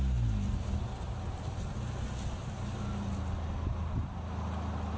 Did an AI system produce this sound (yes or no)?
no